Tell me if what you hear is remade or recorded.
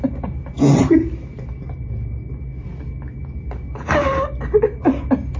recorded